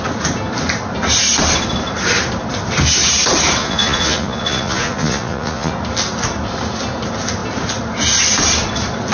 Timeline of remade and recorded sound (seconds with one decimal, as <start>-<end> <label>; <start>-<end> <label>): 0.0-3.6 recorded; 3.6-5.7 remade; 5.7-9.1 recorded